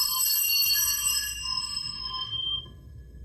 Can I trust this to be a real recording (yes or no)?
no